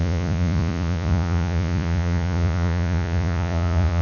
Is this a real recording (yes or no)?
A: no